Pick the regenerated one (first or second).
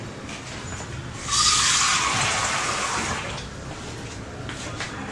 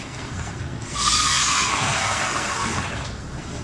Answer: second